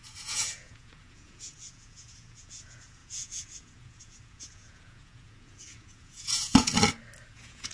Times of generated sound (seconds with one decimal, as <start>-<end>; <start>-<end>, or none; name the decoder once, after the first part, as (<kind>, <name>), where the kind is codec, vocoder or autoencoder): 0.0-6.7 (vocoder, Vocos); 7.3-7.7